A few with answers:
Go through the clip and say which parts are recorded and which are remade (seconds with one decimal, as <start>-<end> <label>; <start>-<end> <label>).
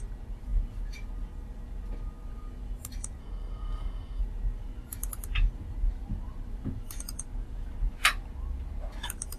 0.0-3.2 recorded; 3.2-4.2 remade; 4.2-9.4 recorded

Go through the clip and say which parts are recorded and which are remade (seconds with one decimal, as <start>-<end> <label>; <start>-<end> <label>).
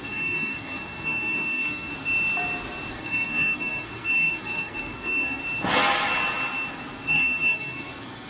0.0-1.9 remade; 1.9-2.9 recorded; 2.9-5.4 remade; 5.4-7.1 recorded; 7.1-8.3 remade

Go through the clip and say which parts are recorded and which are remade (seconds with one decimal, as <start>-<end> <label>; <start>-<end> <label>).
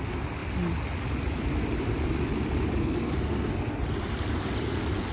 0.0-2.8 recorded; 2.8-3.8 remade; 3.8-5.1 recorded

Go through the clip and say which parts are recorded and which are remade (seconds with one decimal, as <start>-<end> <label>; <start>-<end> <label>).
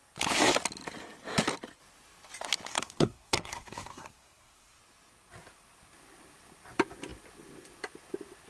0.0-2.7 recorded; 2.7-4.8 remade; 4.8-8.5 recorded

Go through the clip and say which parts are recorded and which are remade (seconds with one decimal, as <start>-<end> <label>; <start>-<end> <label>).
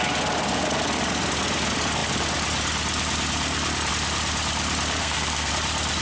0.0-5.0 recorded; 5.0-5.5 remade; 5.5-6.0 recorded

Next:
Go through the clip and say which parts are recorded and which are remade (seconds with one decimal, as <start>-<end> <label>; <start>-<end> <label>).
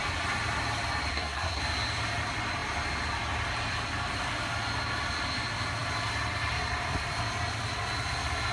0.0-1.1 recorded; 1.1-1.6 remade; 1.6-8.5 recorded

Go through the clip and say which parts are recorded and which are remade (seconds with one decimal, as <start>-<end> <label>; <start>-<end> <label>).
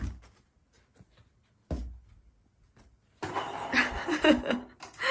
0.0-5.1 recorded